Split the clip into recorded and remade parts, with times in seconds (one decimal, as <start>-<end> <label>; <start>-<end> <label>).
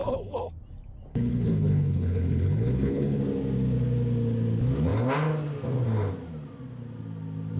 0.0-0.5 remade; 0.5-1.1 recorded; 1.1-3.2 remade; 3.2-7.6 recorded